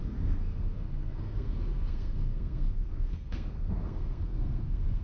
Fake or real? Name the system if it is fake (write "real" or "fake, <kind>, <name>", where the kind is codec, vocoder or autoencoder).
fake, codec, SNAC